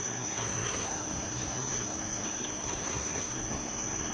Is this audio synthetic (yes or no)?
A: yes